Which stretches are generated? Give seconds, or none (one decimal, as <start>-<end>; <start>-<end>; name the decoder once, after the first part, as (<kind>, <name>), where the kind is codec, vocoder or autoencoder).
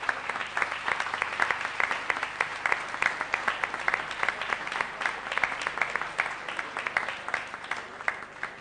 none